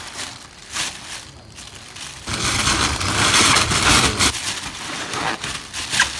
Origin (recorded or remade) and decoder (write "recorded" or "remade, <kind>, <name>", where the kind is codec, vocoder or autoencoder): recorded